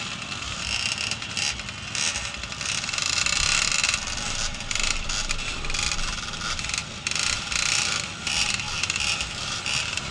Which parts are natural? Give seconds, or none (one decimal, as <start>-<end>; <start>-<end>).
0.0-10.1